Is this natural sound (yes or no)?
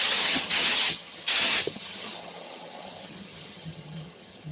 no